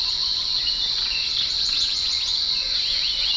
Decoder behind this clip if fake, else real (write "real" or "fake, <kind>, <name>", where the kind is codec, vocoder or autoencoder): fake, vocoder, Vocos